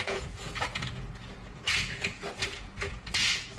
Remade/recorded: remade